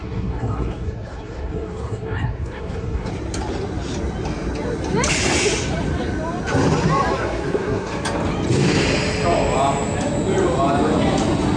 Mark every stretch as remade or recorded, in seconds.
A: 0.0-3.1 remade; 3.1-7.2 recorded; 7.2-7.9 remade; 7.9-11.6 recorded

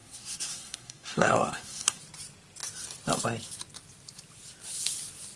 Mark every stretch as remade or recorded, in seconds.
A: 0.0-2.0 remade; 2.0-5.4 recorded

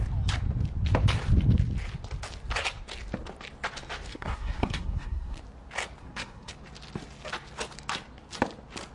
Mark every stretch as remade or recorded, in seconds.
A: 0.0-4.1 recorded; 4.1-5.4 remade; 5.4-6.0 recorded; 6.0-6.5 remade; 6.5-8.9 recorded

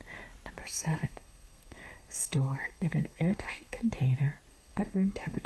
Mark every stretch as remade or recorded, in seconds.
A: 0.0-0.6 recorded; 0.6-3.9 remade; 3.9-4.5 recorded; 4.5-5.5 remade

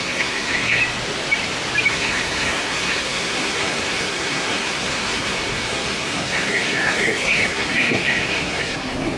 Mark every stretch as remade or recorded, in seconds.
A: 0.0-0.8 remade; 0.8-1.9 recorded; 1.9-9.2 remade

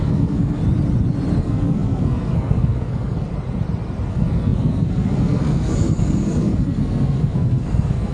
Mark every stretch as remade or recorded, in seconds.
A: 0.0-0.6 remade; 0.6-1.4 recorded; 1.4-3.3 remade; 3.3-4.1 recorded; 4.1-8.1 remade